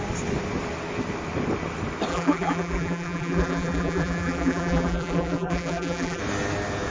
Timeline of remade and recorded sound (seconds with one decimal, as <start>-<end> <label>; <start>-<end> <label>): 0.0-2.1 recorded; 2.1-6.2 remade; 6.2-6.9 recorded